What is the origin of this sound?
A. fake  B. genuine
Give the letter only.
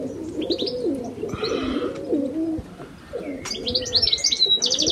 B